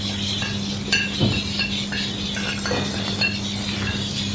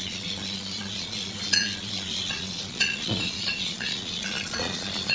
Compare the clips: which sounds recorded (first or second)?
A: first